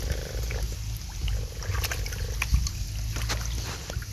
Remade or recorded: recorded